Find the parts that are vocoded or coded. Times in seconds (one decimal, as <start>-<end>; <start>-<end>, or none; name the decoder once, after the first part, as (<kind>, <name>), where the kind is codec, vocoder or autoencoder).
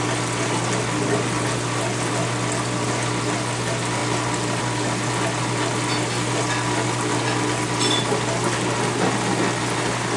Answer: none